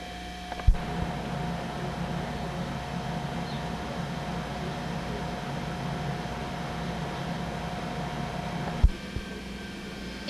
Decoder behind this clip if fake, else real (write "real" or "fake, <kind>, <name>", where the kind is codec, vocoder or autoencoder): real